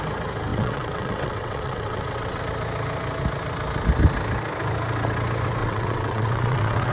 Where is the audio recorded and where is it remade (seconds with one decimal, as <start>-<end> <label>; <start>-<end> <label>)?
0.0-0.5 recorded; 0.5-2.4 remade; 2.4-5.6 recorded; 5.6-6.9 remade